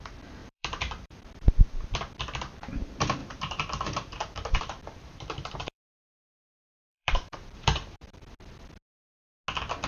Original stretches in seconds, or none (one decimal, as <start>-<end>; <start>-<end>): 0.0-0.4; 1.2-3.2; 8.2-9.9